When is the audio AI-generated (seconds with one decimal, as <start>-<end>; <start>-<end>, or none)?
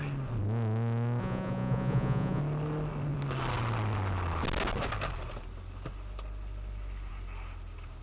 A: 1.2-2.4